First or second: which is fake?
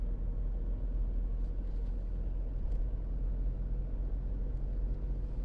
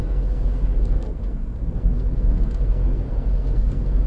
second